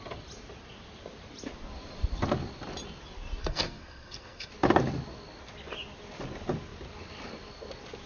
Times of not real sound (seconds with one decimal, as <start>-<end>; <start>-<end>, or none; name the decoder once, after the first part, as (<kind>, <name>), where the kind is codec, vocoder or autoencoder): 3.4-4.5 (codec, SNAC)